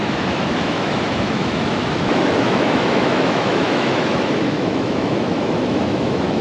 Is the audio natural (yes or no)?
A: no